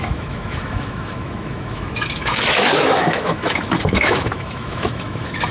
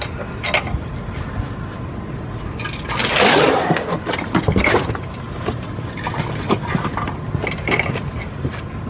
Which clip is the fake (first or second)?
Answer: first